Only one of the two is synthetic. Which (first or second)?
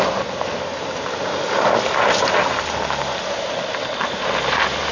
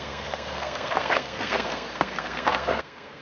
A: second